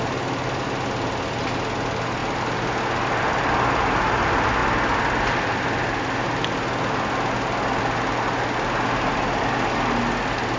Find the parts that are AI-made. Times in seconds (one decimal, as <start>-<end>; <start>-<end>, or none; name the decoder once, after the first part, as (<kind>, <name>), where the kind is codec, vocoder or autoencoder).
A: none

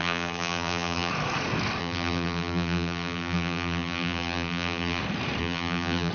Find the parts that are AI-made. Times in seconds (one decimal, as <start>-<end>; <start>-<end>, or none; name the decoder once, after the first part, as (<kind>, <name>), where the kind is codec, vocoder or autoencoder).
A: 0.0-1.1 (vocoder, BigVGAN v2); 1.8-5.0; 5.4-6.1

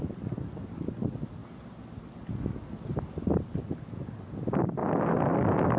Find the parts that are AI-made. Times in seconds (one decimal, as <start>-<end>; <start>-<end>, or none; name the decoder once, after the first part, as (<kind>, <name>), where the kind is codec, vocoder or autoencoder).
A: none

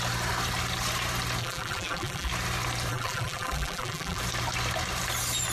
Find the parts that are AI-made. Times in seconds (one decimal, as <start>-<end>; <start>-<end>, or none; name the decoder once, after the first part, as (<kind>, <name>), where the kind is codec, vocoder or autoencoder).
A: 1.4-2.3 (vocoder, BigVGAN v2); 2.9-4.2